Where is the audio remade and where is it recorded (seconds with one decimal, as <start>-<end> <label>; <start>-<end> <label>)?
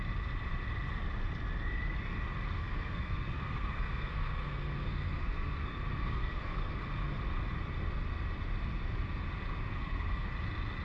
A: 0.0-2.6 recorded; 2.6-6.8 remade; 6.8-9.7 recorded; 9.7-10.3 remade; 10.3-10.8 recorded